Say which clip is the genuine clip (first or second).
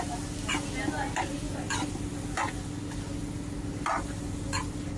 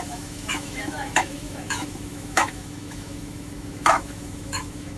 first